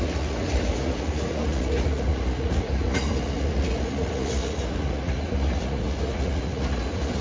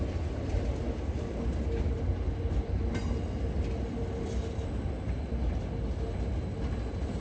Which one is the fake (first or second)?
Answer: first